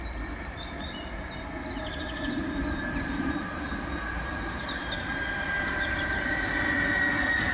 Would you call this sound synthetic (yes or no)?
no